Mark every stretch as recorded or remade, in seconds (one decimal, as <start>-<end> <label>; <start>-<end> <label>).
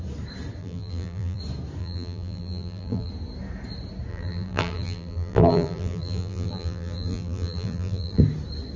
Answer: 0.0-0.6 recorded; 0.6-1.4 remade; 1.4-1.8 recorded; 1.8-3.1 remade; 3.1-4.1 recorded; 4.1-8.2 remade; 8.2-8.8 recorded